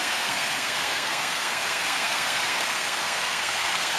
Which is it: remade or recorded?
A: remade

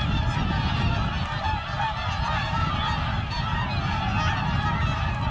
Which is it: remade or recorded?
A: recorded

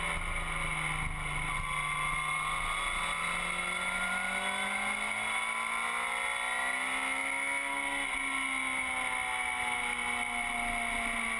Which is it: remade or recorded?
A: recorded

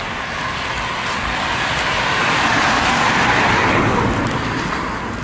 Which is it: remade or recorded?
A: recorded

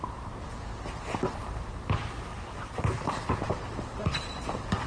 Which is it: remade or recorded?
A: recorded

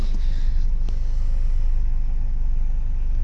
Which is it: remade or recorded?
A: recorded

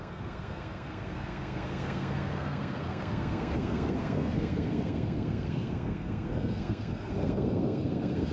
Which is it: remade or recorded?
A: remade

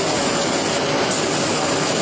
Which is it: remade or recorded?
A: recorded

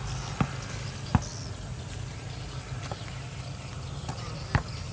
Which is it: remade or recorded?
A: recorded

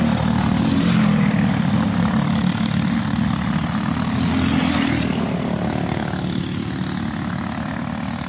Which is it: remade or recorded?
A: recorded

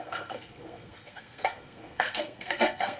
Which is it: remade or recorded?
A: remade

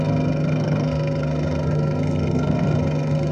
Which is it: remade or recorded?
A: remade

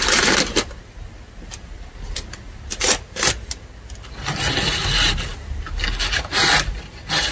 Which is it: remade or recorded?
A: recorded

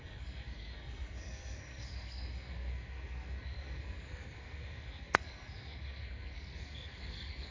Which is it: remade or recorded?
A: remade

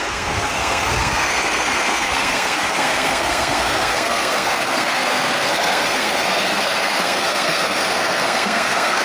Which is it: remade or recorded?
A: remade